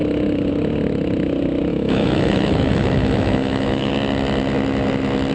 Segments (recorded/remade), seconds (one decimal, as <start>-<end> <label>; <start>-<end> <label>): 0.0-1.7 recorded; 1.7-3.9 remade; 3.9-5.3 recorded